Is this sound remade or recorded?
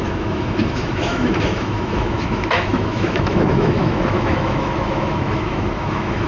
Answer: remade